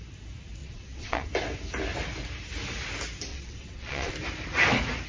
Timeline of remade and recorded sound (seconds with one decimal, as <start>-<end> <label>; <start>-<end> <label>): 0.0-0.6 recorded; 0.6-1.3 remade; 1.3-3.3 recorded; 3.3-4.1 remade; 4.1-5.1 recorded